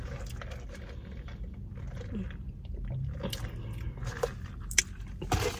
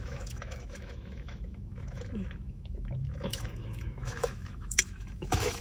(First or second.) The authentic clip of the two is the first